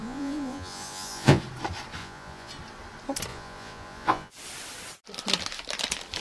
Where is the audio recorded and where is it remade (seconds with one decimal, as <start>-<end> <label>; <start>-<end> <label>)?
0.0-1.4 remade; 1.4-2.0 recorded; 2.0-2.5 remade; 2.5-3.3 recorded; 3.3-4.3 remade; 4.3-6.2 recorded